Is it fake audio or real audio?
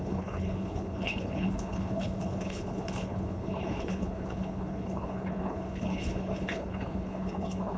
fake